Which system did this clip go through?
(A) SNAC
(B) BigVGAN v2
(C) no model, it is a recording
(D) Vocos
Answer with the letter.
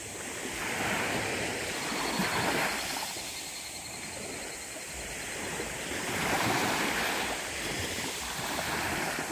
C